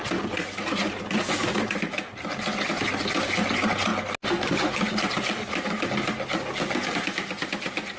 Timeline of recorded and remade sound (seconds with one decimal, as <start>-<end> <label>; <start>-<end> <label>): 0.0-8.0 recorded